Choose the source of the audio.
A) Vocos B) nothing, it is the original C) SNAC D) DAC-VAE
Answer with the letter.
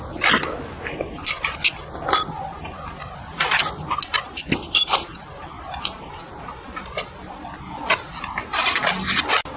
B